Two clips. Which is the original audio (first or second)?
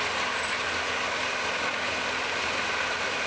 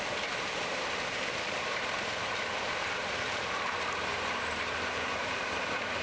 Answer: first